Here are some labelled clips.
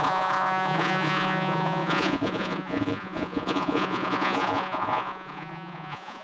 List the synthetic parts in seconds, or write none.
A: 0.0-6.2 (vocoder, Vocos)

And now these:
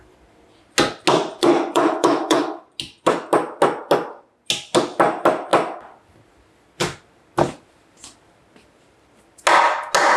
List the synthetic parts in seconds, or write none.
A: 1.4-2.6 (vocoder, Vocos)

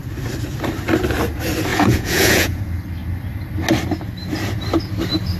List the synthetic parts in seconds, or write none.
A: 1.7-2.6 (vocoder, Vocos)

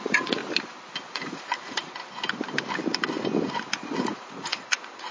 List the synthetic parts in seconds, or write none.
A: 0.0-0.4 (vocoder, Vocos); 1.1-2.0; 4.1-5.1

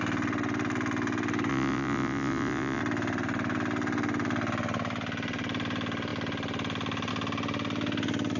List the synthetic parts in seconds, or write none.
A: 1.5-2.8 (vocoder, Vocos)

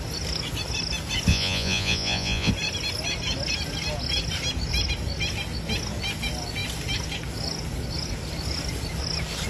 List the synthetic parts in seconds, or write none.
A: 1.3-2.5 (vocoder, Vocos)